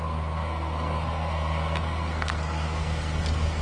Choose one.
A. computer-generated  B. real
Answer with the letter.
A